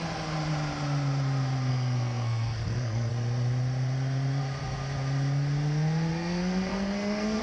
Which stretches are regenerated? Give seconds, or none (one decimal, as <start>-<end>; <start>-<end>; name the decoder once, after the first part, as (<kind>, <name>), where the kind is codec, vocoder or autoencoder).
1.7-3.1 (codec, SNAC); 6.1-7.4